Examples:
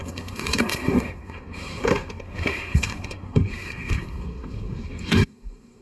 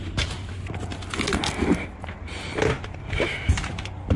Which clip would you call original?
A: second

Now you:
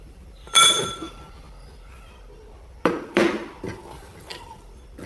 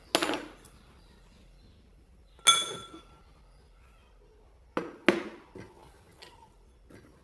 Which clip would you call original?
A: second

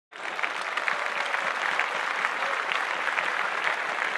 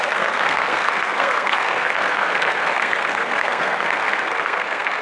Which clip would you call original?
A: first